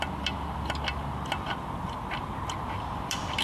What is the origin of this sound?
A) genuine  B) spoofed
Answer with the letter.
A